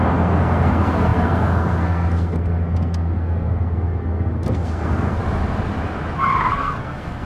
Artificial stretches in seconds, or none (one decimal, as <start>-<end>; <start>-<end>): 0.0-5.2; 6.5-7.2